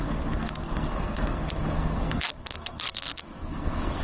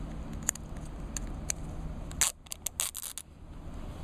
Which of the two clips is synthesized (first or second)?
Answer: first